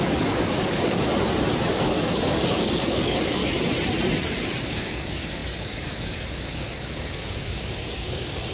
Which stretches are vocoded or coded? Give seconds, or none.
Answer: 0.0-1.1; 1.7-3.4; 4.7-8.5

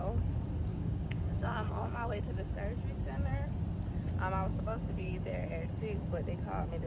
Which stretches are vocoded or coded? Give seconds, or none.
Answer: 0.7-2.2; 4.5-5.1

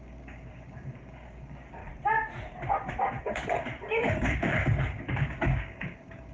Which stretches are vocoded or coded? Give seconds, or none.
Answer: 0.0-1.8; 3.2-6.3

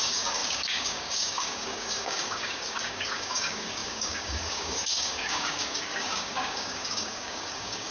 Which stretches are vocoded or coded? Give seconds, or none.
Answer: 0.0-7.9